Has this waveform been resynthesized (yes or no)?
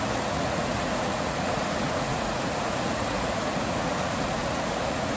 yes